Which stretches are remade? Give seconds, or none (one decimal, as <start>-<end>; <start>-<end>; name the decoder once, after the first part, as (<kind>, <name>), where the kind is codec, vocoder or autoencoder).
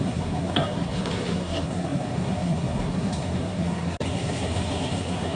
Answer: 0.0-5.4 (codec, SNAC)